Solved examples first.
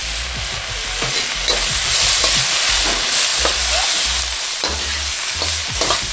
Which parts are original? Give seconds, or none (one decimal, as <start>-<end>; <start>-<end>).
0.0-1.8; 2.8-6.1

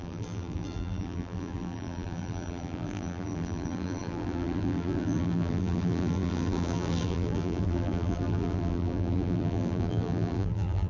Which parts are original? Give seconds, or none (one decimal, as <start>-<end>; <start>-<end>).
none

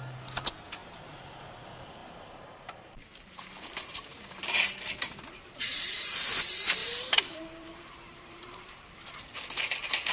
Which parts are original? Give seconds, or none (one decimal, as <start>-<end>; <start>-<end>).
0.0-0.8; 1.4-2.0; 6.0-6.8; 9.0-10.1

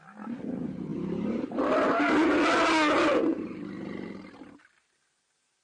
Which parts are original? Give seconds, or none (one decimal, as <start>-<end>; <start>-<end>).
0.0-0.9; 1.7-3.3; 4.3-5.6

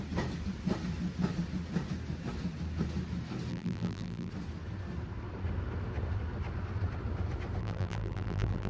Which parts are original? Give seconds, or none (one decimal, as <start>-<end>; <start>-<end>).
0.0-3.5; 4.3-7.6

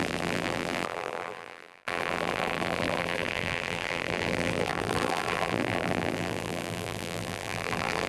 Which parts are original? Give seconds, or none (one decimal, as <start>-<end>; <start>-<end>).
none